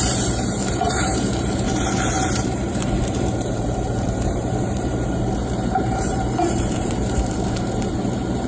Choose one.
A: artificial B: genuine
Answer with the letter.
A